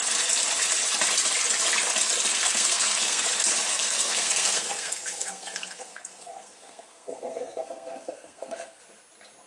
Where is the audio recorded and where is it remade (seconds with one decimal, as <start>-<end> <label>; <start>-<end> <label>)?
0.0-2.3 recorded; 2.3-3.3 remade; 3.3-3.7 recorded; 3.7-8.8 remade; 8.8-9.5 recorded